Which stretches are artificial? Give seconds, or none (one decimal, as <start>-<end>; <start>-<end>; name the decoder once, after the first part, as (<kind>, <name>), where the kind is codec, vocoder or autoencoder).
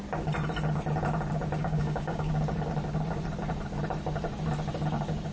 1.6-2.3 (codec, DAC)